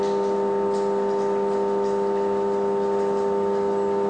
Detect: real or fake real